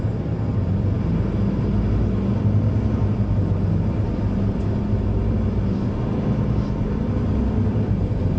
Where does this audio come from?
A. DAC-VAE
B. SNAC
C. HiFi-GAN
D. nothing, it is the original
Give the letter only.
D